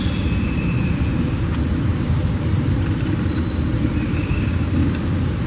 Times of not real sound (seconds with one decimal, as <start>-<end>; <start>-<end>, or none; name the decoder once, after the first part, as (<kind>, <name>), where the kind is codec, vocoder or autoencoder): 4.1-4.7 (codec, DAC)